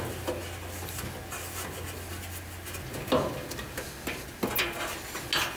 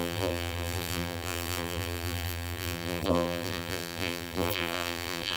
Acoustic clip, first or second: first